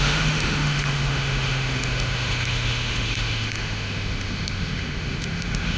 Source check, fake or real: fake